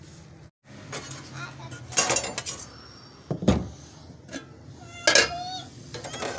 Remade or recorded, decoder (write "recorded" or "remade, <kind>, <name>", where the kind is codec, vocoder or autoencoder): recorded